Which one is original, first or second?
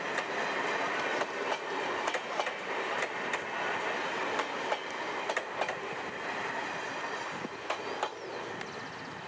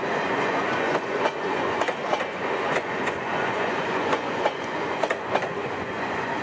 first